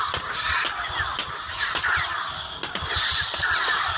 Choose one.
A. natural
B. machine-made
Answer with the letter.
A